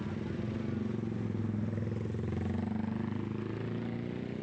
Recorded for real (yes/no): yes